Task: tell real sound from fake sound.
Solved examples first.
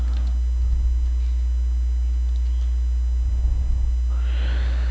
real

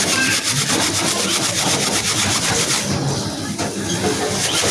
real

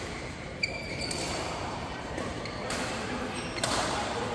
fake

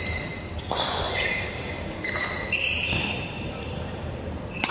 fake